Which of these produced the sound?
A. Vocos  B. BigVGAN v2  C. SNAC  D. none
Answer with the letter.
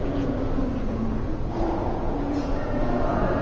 A